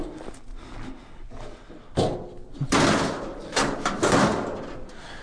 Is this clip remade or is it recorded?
recorded